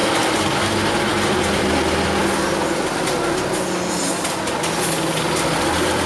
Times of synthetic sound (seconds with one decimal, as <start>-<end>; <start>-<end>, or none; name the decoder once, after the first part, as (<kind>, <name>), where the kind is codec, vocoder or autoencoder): none